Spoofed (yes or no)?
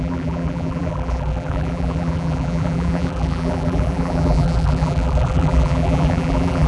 yes